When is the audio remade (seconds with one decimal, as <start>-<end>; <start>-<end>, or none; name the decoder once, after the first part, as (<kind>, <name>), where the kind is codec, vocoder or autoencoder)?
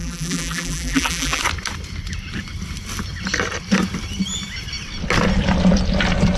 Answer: 0.0-1.4 (vocoder, BigVGAN v2)